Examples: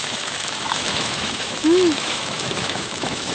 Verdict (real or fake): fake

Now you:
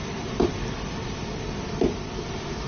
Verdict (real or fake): real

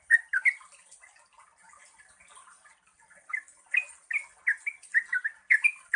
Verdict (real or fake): real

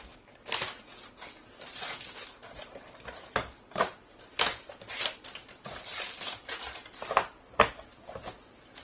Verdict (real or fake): fake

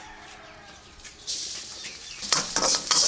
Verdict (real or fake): real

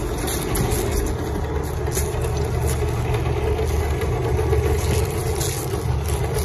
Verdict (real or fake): real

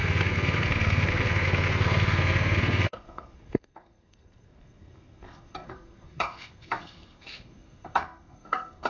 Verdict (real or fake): fake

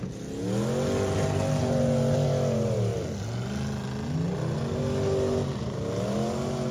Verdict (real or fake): real